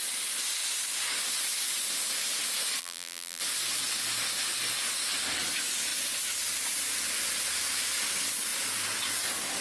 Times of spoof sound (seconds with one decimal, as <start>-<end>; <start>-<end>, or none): 2.8-3.4